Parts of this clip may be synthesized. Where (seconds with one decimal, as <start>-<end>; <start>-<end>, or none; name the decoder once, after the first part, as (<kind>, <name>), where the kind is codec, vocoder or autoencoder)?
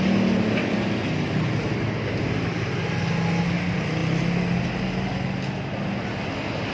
none